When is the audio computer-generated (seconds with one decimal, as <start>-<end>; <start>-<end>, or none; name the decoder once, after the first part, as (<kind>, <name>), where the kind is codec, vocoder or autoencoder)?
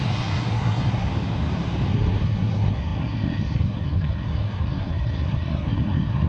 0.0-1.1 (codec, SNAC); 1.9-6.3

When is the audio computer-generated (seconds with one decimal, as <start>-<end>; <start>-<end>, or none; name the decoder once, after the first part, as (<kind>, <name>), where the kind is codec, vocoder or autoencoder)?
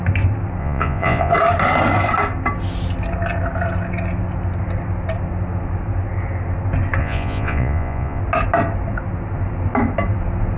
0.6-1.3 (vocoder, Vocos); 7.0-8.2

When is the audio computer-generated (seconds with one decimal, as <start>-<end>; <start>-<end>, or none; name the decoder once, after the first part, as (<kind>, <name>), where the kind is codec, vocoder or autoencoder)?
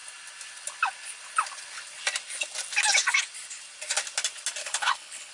4.6-5.3 (codec, HILCodec)